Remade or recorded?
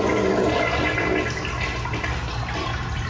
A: recorded